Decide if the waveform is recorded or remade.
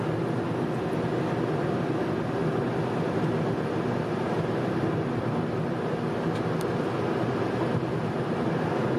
recorded